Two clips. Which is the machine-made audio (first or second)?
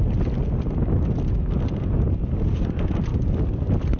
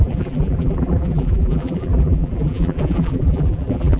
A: second